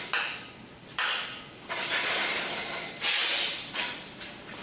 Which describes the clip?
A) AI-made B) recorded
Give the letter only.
B